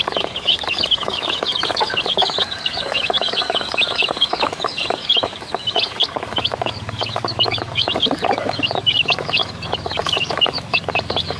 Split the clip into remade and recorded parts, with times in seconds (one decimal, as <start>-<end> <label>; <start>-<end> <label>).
0.0-11.4 remade